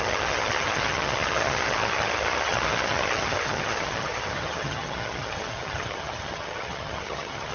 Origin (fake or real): fake